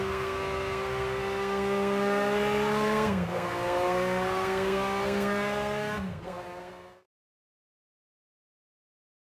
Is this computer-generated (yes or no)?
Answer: yes